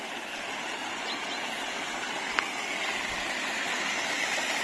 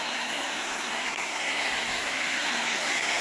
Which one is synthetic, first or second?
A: second